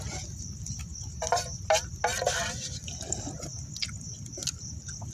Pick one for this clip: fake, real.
real